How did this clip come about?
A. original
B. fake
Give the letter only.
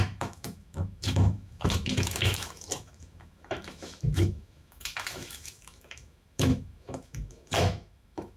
B